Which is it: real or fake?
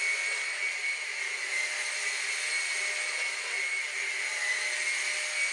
real